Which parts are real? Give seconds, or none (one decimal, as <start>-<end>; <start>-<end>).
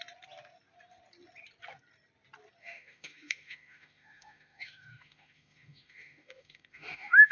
0.0-2.6